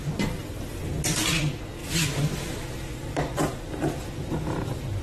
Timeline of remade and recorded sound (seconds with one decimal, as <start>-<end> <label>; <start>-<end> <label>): 0.0-5.0 recorded